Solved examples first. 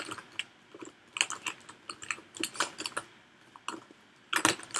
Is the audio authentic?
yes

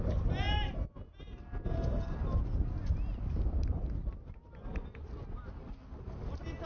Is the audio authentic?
yes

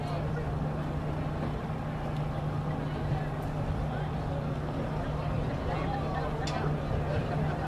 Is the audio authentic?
yes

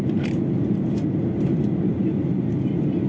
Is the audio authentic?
yes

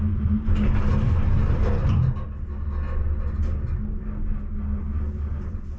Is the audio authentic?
yes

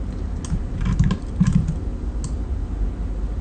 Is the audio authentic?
yes